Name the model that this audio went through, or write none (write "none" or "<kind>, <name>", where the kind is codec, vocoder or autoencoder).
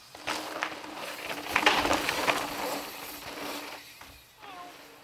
none